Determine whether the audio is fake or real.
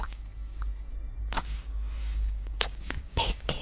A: fake